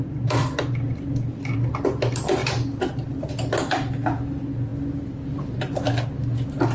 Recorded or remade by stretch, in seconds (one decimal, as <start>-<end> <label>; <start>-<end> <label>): 0.0-0.4 recorded; 0.4-1.7 remade; 1.7-2.4 recorded; 2.4-3.3 remade; 3.3-6.7 recorded